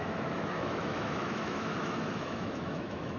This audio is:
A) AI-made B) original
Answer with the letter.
A